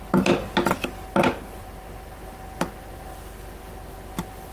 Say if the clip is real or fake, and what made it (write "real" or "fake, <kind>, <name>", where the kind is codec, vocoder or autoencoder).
real